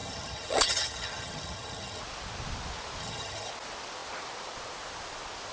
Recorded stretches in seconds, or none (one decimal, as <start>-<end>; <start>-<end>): 2.0-3.0; 3.5-5.5